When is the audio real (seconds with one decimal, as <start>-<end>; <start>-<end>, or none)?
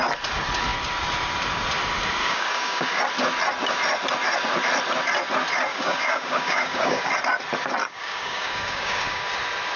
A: 0.0-2.2; 3.0-5.7; 7.1-7.8; 9.3-9.8